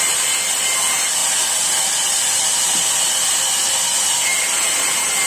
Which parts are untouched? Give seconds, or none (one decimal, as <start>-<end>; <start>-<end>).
0.0-4.3